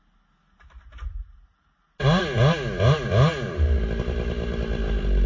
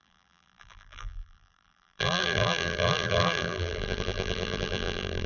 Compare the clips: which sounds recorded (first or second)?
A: first